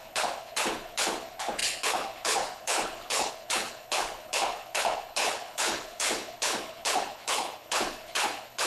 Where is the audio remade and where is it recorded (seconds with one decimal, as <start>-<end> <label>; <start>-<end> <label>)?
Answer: 0.0-8.7 remade